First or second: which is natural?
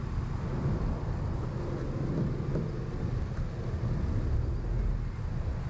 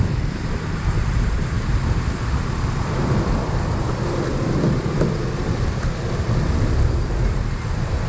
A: first